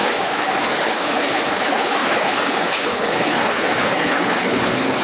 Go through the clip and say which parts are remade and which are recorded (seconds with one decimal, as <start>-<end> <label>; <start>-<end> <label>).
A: 0.0-5.0 remade